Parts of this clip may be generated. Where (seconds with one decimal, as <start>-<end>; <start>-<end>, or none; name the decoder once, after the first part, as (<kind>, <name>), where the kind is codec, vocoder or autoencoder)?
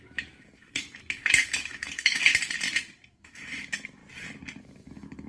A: 0.0-2.3 (autoencoder, DAC-VAE); 3.1-4.0; 4.6-5.3